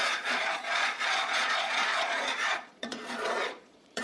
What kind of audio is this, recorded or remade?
remade